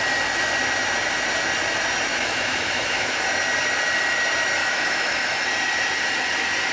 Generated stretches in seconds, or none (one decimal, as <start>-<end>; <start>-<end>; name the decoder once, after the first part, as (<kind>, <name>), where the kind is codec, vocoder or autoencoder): 2.1-3.2 (autoencoder, DAC-VAE); 4.6-5.4

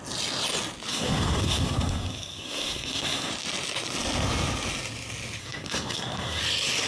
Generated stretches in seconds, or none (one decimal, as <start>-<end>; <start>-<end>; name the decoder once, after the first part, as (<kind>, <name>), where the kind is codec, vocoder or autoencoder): 0.9-3.3 (codec, SNAC); 5.4-6.4

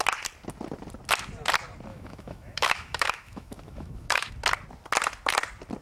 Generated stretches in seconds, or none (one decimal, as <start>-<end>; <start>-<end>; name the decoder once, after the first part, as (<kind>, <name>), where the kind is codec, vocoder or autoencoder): 1.9-4.3 (autoencoder, DAC-VAE)